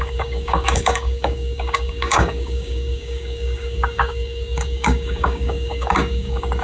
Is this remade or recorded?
remade